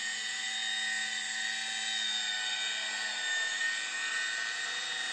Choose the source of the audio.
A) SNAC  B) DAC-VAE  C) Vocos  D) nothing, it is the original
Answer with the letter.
D